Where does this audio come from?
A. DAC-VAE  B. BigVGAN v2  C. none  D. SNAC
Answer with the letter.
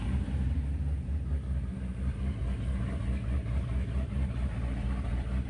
B